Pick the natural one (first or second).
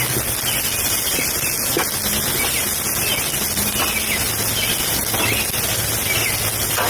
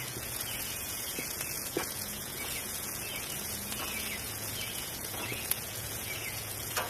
first